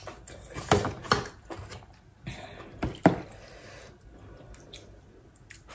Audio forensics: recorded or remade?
recorded